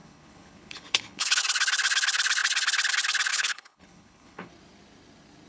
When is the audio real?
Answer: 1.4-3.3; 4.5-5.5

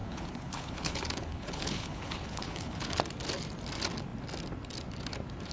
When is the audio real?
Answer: 3.0-5.5

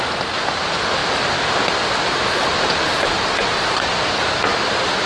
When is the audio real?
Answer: 0.0-5.1